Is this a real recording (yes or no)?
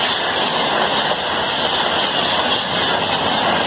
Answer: yes